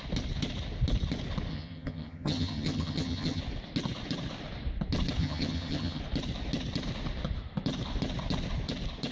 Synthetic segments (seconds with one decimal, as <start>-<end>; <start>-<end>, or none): 1.5-3.4; 5.2-6.0

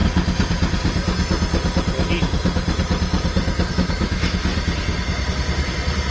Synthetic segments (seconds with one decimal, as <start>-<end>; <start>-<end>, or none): 3.7-4.5

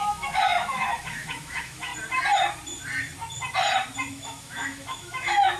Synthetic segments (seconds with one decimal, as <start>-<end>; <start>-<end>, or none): 0.0-1.9; 4.1-5.6